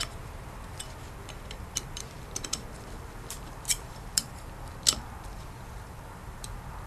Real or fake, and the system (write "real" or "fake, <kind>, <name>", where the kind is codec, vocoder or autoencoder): fake, vocoder, BigVGAN v2